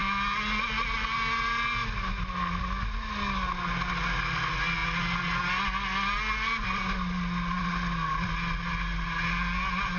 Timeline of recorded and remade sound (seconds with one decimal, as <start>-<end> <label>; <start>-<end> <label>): 0.0-10.0 recorded